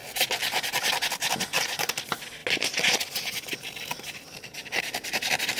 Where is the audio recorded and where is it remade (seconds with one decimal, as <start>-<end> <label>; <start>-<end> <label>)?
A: 0.0-5.6 recorded